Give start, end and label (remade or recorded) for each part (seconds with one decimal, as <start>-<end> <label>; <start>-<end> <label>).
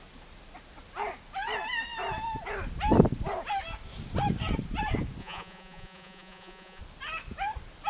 0.0-5.2 recorded; 5.2-6.8 remade; 6.8-7.9 recorded